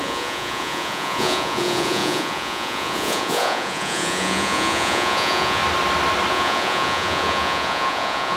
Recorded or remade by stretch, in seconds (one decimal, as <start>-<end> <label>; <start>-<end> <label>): 0.0-5.6 remade; 5.6-6.3 recorded; 6.3-8.4 remade